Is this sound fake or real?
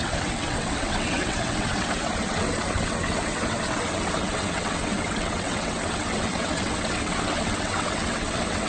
fake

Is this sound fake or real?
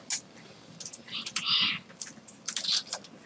real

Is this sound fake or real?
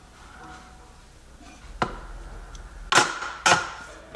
real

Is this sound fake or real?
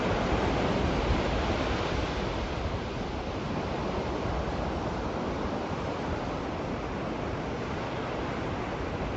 real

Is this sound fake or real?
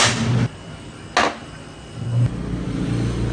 real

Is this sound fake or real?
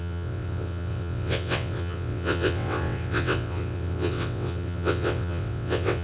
fake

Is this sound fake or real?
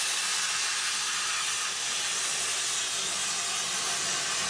real